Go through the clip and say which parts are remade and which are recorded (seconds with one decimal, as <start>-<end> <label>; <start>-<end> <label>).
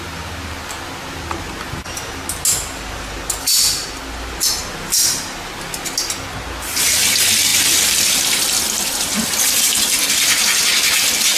0.0-11.4 recorded